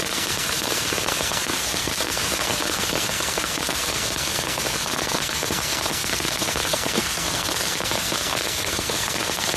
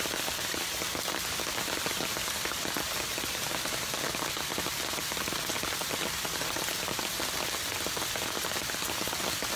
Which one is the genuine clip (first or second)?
second